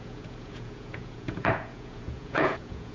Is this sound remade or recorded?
remade